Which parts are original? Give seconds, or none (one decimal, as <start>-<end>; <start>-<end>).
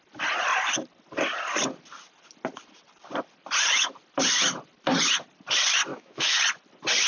0.0-5.9; 6.4-7.1